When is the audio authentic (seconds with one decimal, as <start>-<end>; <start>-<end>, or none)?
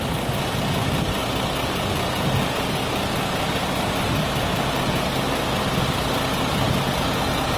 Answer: 0.0-7.6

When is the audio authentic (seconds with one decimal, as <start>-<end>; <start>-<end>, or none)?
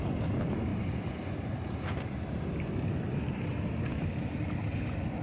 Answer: 0.0-5.2